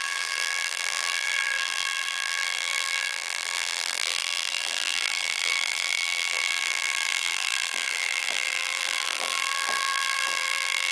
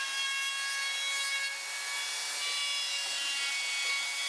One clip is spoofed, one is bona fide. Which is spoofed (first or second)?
first